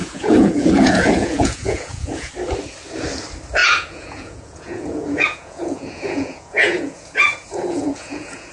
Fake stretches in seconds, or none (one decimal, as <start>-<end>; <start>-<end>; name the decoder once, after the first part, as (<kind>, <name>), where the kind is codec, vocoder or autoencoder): 0.0-2.3 (vocoder, Vocos); 3.6-8.5